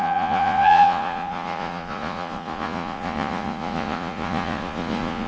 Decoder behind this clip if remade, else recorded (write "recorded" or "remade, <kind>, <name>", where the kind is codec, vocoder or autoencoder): remade, vocoder, Vocos